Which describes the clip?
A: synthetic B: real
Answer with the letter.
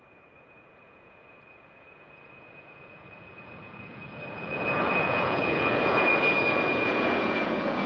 A